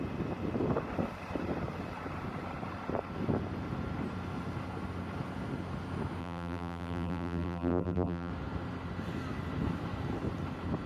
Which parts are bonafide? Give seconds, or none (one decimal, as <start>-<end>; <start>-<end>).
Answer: 0.0-6.2; 8.3-10.9